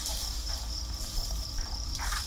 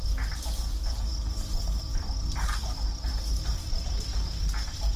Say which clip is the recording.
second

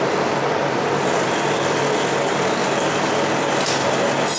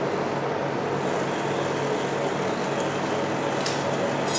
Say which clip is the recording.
second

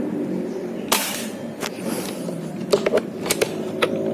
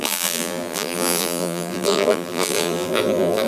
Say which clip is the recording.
first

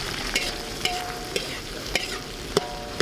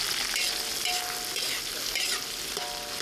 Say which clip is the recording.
second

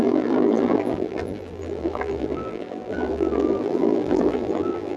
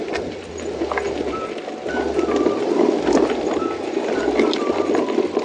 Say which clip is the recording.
second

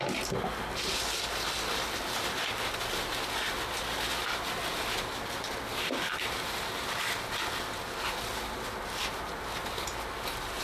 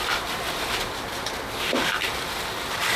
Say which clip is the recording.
first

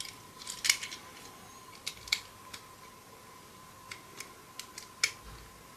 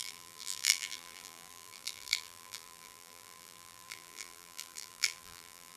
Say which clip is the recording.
first